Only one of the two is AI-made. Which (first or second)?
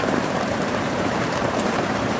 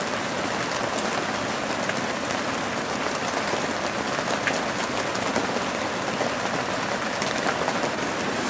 first